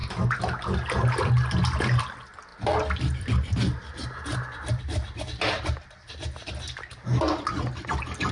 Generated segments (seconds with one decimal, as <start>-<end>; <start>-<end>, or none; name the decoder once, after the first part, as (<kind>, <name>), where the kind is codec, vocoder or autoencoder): none